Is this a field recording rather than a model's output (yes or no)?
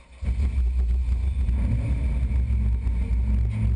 yes